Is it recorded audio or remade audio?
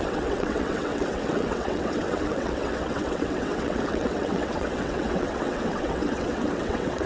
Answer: remade